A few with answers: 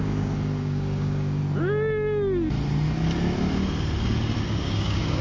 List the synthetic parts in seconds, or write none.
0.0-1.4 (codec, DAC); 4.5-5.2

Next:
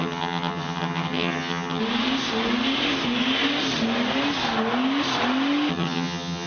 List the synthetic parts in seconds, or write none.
0.0-1.8 (vocoder, HiFi-GAN); 5.7-6.5

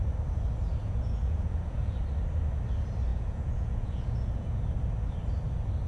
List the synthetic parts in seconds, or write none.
0.8-2.0 (vocoder, Vocos); 3.1-4.6

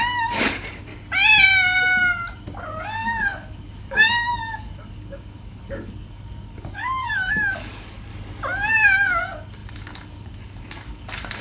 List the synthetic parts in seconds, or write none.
0.0-0.9 (codec, DAC); 2.6-8.1; 8.7-11.4

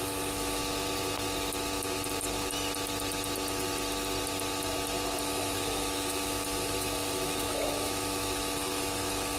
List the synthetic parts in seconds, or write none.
0.0-0.6 (autoencoder, DAC-VAE); 5.2-9.4

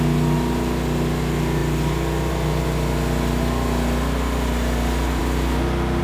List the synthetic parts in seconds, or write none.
none